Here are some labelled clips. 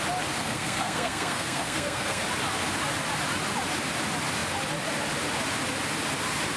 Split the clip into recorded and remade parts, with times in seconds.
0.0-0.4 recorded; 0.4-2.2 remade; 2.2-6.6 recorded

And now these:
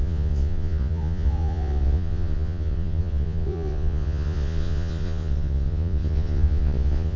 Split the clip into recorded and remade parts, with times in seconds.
0.0-7.2 remade

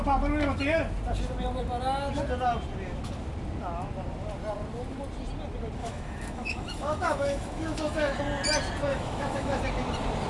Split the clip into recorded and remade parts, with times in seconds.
0.0-5.8 recorded; 5.8-8.2 remade; 8.2-8.9 recorded; 8.9-9.6 remade; 9.6-10.3 recorded

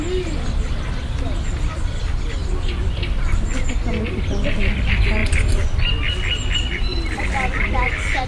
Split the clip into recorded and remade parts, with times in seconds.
0.0-6.9 recorded; 6.9-7.5 remade; 7.5-8.3 recorded